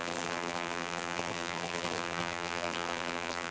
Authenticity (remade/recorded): remade